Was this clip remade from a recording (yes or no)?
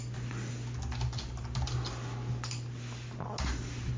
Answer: no